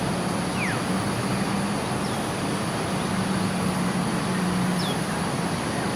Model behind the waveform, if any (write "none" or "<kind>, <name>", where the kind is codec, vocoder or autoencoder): none